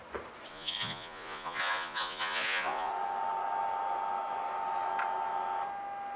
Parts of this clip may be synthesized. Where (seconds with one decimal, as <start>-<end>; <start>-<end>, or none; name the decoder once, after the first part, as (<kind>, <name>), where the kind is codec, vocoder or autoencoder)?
0.5-2.9 (vocoder, Vocos)

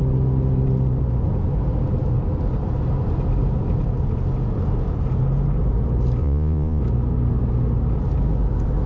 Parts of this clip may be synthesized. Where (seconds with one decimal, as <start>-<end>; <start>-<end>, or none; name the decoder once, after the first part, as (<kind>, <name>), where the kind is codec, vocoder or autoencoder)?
6.2-6.8 (vocoder, Vocos)

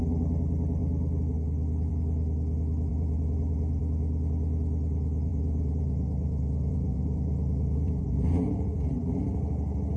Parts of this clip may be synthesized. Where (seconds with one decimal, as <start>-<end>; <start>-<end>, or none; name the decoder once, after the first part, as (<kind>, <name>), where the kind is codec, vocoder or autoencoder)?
2.9-3.8 (vocoder, Vocos); 5.3-8.9

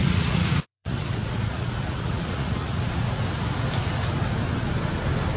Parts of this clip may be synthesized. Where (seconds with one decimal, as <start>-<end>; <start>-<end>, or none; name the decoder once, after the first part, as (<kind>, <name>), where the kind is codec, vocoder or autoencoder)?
0.0-3.2 (vocoder, Vocos)

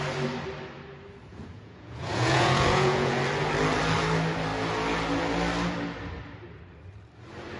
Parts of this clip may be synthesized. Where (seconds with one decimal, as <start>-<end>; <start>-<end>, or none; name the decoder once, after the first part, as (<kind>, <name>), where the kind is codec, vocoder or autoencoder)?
1.3-3.2 (vocoder, Vocos)

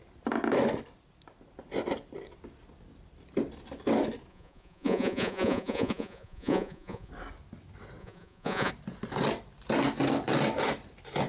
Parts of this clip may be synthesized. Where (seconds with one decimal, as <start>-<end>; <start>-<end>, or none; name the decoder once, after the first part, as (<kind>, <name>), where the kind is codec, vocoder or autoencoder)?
4.3-7.1 (vocoder, Vocos); 8.0-8.7

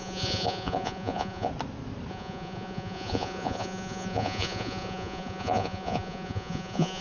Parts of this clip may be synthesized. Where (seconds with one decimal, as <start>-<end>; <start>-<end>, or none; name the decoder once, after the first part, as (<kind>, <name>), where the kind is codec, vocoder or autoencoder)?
0.0-1.5 (vocoder, Vocos); 2.1-7.0